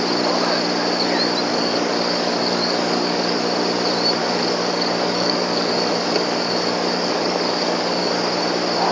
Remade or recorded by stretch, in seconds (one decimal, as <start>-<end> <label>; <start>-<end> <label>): 0.0-1.5 recorded; 1.5-3.4 remade; 3.4-4.2 recorded; 4.2-8.1 remade; 8.1-8.9 recorded